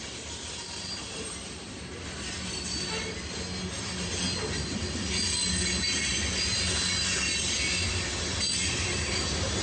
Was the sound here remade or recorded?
recorded